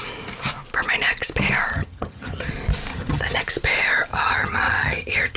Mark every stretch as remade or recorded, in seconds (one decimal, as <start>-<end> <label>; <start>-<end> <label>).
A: 0.0-1.7 recorded; 1.7-2.5 remade; 2.5-2.9 recorded; 2.9-3.4 remade; 3.4-4.1 recorded; 4.1-5.4 remade